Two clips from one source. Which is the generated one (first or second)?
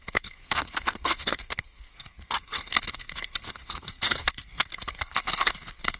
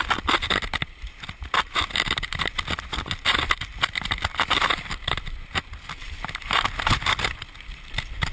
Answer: first